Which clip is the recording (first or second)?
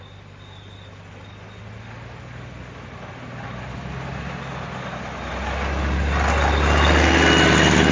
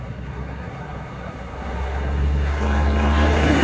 first